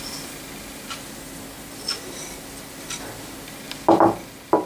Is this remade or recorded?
recorded